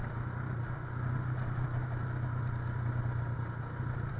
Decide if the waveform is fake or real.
real